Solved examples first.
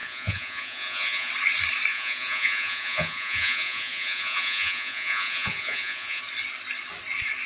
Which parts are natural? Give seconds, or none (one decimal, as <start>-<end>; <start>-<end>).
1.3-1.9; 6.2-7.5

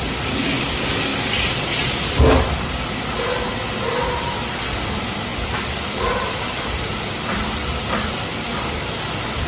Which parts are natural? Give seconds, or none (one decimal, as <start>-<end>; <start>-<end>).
0.0-9.5

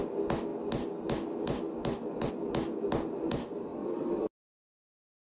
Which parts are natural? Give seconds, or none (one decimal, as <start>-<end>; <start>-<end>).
0.0-5.3

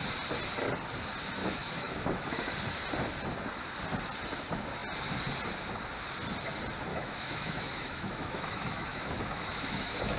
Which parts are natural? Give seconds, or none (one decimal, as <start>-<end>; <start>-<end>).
0.0-1.4; 2.5-6.9

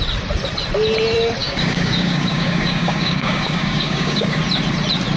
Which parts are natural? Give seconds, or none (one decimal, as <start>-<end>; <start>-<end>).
0.0-1.4; 4.4-5.2